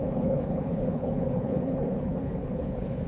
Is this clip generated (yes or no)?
yes